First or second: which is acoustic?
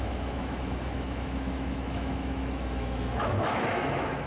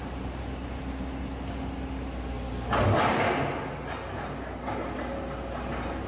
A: second